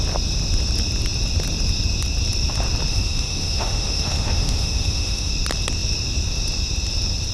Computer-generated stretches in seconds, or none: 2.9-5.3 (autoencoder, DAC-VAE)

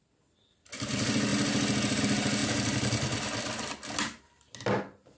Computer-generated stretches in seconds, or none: none

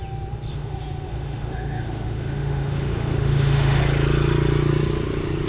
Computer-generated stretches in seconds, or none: 0.5-3.8 (autoencoder, DAC-VAE)